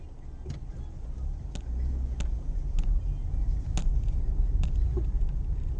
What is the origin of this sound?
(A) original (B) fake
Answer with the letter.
A